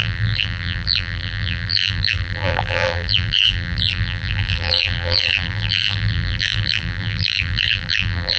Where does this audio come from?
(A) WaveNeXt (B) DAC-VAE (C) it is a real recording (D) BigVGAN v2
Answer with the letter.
D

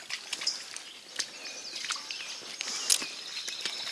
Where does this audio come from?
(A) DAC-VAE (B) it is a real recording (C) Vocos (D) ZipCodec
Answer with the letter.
B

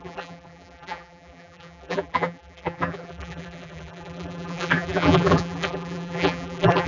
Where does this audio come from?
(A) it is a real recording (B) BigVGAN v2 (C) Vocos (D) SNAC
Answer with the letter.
B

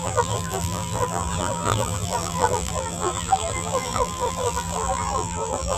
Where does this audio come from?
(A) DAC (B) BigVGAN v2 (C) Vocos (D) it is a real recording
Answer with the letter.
B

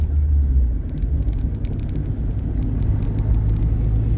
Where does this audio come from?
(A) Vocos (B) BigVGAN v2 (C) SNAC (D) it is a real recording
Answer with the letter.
D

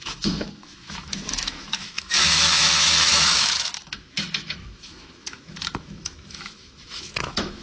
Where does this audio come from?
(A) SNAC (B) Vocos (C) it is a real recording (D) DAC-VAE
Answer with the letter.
D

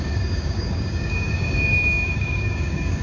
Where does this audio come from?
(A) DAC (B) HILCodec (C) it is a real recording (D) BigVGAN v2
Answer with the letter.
A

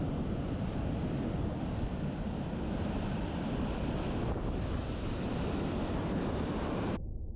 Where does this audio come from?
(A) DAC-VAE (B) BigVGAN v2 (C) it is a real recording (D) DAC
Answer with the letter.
C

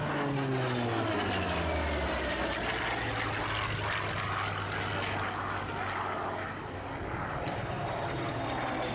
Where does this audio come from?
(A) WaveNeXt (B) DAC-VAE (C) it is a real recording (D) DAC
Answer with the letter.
C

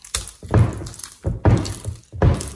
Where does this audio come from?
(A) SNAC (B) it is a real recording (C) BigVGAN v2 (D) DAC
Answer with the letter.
B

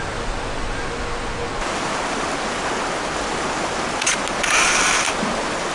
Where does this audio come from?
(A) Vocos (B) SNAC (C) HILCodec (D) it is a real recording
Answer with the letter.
D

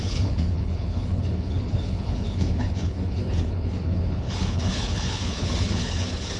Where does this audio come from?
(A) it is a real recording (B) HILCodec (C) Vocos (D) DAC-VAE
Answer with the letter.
B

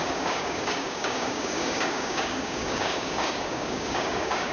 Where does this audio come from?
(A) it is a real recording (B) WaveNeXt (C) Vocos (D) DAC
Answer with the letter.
D